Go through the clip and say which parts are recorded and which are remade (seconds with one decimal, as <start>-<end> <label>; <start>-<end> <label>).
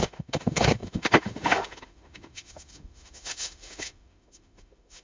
0.0-5.0 remade